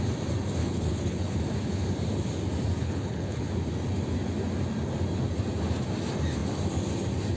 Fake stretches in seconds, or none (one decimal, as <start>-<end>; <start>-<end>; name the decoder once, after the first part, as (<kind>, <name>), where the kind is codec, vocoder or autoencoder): 0.6-1.4 (codec, HILCodec); 2.8-3.5